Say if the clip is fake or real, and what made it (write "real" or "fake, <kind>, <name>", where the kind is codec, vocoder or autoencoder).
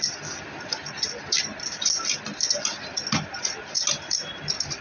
real